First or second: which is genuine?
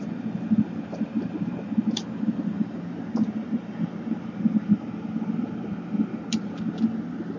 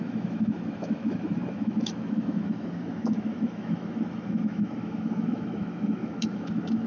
first